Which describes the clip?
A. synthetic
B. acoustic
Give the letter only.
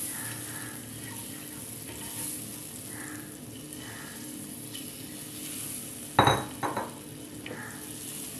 B